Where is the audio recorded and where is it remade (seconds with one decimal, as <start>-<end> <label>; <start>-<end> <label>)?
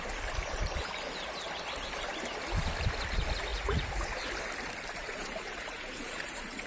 0.0-3.5 recorded; 3.5-4.1 remade; 4.1-5.0 recorded; 5.0-6.7 remade